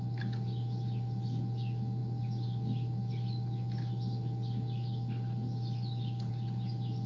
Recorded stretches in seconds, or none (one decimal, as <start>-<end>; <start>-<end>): 0.0-7.1